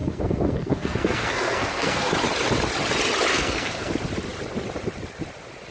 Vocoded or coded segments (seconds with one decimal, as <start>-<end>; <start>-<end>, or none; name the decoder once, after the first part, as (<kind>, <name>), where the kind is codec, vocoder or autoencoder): 0.0-2.1 (codec, SNAC); 3.3-3.9